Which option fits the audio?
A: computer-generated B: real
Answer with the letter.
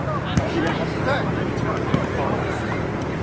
A